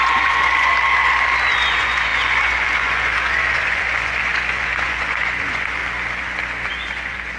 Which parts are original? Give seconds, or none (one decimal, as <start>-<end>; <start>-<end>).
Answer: 0.7-1.5; 5.8-6.7